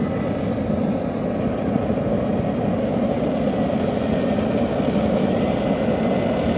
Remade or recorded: recorded